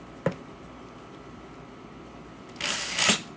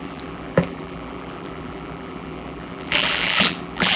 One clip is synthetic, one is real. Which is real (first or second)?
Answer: first